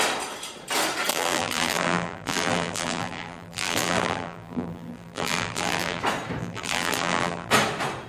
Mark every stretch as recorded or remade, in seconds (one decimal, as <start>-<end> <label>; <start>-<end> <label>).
0.0-1.1 recorded; 1.1-6.0 remade; 6.0-6.4 recorded; 6.4-7.5 remade; 7.5-8.1 recorded